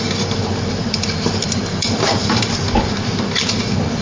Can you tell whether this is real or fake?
fake